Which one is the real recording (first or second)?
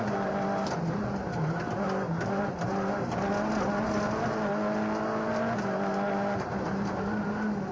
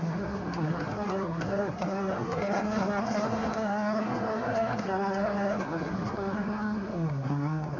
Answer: first